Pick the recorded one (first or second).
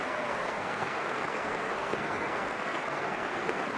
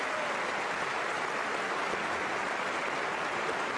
second